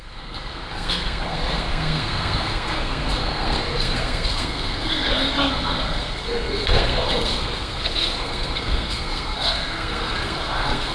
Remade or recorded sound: remade